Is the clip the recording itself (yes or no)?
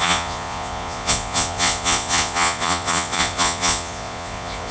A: no